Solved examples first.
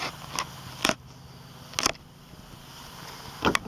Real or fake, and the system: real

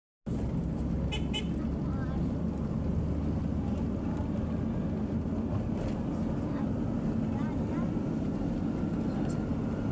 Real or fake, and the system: real